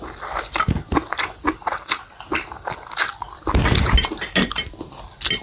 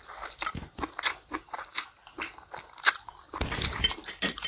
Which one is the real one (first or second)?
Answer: first